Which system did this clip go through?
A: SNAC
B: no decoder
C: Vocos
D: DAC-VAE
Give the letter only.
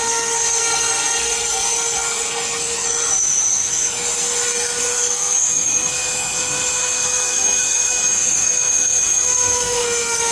A